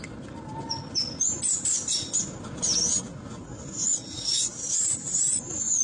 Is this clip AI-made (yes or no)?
no